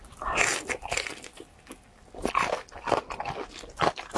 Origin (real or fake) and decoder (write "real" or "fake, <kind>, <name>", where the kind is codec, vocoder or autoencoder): real